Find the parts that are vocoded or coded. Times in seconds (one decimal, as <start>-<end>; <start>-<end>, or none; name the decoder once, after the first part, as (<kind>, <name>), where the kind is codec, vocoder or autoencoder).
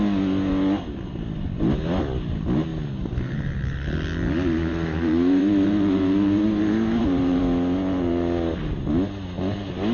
2.7-3.9 (vocoder, BigVGAN v2); 4.7-7.4